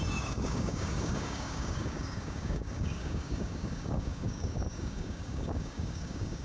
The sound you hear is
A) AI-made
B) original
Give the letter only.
A